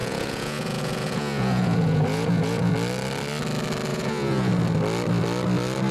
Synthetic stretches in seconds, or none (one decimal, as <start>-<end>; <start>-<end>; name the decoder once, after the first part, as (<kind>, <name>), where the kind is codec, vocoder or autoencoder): 0.0-2.7 (vocoder, Vocos); 3.9-4.5

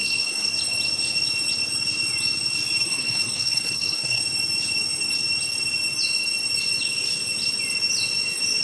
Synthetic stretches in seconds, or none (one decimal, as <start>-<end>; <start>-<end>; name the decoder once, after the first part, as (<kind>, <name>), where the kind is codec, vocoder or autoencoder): 0.0-0.5 (codec, SNAC); 2.8-4.2